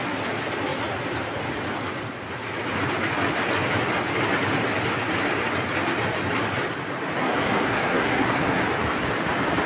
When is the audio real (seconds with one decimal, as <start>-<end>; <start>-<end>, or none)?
0.0-7.2; 8.6-9.7